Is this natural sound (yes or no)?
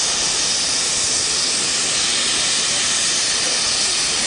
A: yes